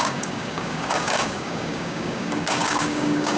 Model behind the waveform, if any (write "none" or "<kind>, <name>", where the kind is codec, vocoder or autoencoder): codec, DAC